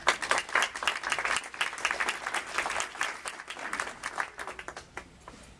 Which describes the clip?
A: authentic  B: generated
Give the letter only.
A